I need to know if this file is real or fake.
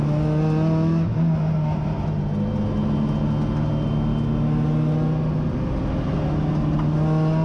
real